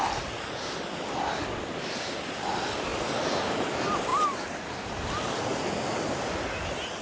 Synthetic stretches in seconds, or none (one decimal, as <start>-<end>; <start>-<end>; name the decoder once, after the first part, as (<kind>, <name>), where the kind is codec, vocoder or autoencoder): 4.1-5.1 (vocoder, BigVGAN v2)